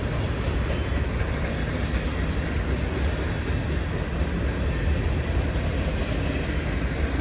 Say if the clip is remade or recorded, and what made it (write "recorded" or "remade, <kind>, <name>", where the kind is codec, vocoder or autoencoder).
recorded